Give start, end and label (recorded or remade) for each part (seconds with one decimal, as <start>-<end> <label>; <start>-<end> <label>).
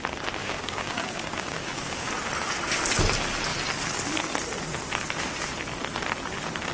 0.0-0.4 recorded; 0.4-2.1 remade; 2.1-6.7 recorded